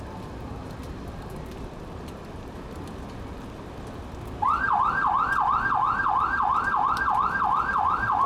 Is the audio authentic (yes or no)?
yes